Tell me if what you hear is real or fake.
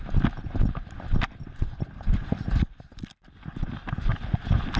real